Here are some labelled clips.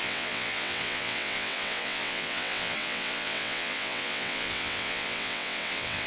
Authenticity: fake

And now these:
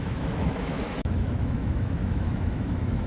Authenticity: fake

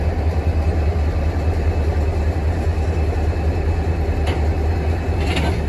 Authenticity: real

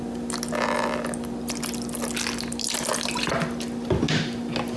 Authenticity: real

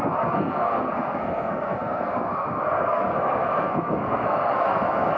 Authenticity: fake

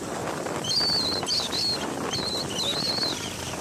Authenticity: real